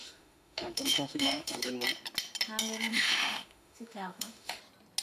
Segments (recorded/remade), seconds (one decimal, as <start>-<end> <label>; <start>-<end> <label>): 0.0-1.7 remade; 1.7-2.9 recorded; 2.9-4.6 remade; 4.6-5.0 recorded